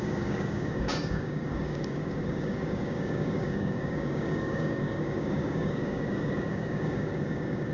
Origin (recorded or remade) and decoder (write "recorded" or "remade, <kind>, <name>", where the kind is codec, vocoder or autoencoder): remade, codec, DAC